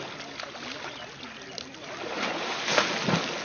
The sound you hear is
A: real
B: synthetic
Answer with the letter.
A